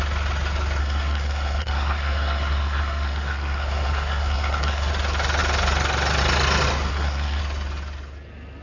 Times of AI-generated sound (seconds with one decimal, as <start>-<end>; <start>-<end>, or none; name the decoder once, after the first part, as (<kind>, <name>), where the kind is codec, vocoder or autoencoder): 0.8-4.9 (codec, SNAC); 6.9-7.4